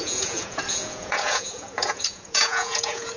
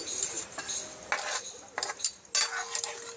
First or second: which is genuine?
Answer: second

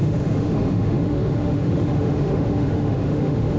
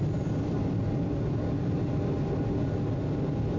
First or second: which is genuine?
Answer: second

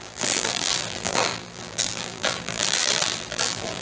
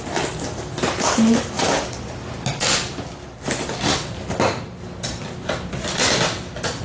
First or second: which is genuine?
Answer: second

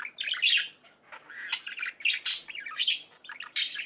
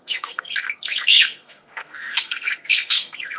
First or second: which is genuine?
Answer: first